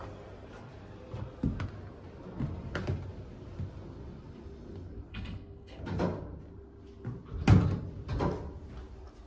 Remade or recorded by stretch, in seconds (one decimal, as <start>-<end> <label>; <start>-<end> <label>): 0.0-5.1 recorded; 5.1-5.8 remade; 5.8-9.3 recorded